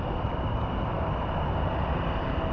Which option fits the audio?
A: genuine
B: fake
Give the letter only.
A